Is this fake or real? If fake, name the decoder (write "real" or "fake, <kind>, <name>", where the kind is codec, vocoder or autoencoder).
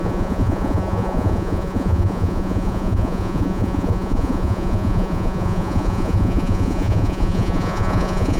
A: fake, vocoder, Vocos